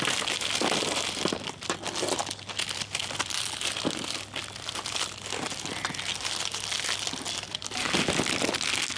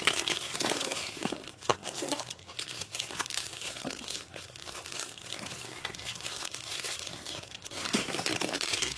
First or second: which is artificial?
second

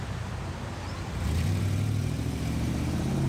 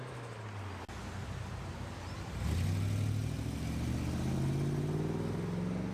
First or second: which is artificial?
first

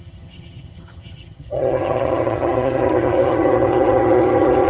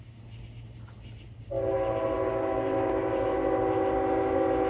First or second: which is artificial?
first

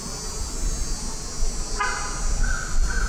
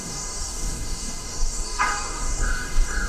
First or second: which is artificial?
second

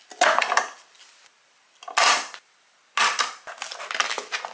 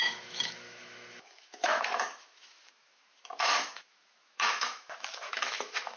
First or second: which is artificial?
second